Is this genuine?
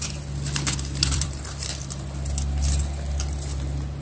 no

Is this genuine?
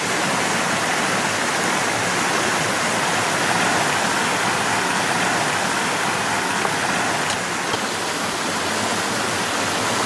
yes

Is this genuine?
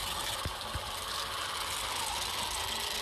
yes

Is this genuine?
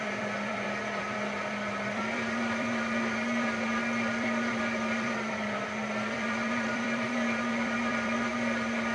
no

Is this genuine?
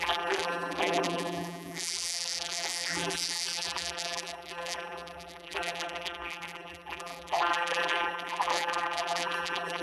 no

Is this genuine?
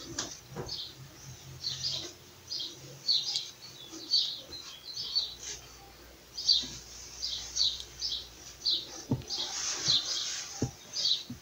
yes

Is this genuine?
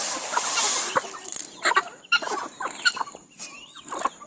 no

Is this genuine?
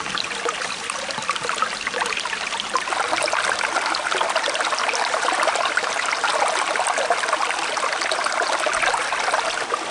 yes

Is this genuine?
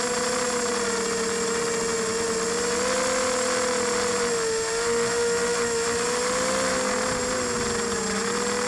yes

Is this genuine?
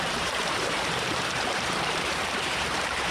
no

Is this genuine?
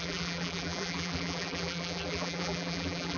no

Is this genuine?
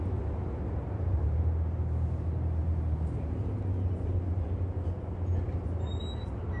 yes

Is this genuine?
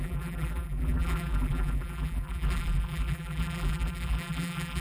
no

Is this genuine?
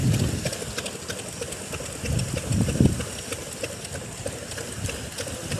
yes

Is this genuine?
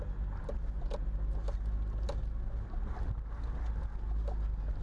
yes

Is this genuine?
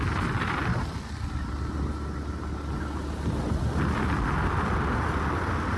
yes